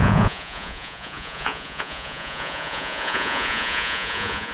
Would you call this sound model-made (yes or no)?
yes